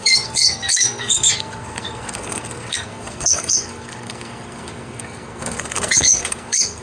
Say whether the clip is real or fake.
fake